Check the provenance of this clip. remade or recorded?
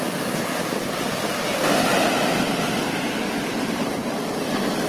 recorded